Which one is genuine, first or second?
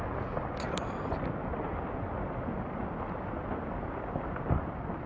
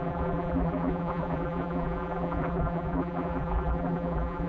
first